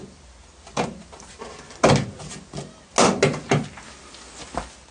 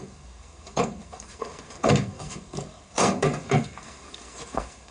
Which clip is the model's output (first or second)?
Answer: second